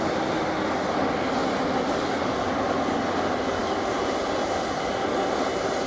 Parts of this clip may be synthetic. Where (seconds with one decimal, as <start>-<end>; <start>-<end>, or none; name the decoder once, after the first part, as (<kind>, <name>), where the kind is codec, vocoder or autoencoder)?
3.6-4.2 (vocoder, BigVGAN v2)